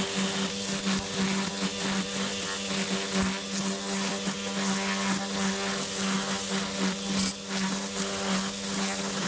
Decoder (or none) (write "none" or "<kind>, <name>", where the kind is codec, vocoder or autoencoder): none